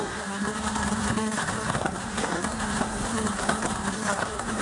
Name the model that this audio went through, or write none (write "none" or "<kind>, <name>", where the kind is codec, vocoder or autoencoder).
codec, SNAC